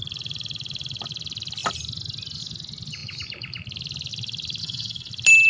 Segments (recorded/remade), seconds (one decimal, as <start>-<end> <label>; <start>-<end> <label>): 0.0-4.6 recorded; 4.6-5.1 remade; 5.1-5.5 recorded